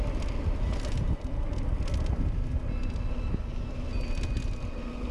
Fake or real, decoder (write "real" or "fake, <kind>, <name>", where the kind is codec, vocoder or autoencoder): real